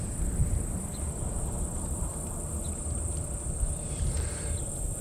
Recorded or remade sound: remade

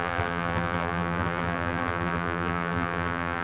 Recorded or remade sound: remade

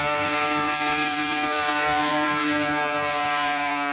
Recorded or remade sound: remade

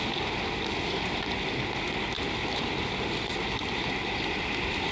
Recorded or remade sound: recorded